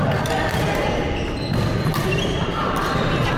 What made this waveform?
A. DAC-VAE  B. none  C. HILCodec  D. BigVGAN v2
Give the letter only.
D